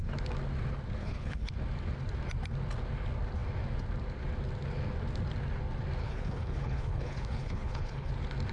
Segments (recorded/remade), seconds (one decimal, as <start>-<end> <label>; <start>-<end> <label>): 0.0-1.0 recorded; 1.0-1.5 remade; 1.5-6.0 recorded; 6.0-8.1 remade; 8.1-8.5 recorded